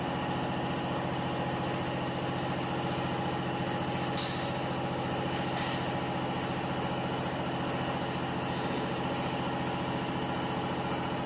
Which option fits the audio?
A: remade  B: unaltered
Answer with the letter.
B